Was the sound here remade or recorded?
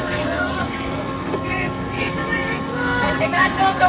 remade